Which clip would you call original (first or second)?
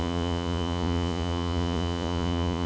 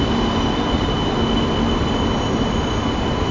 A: second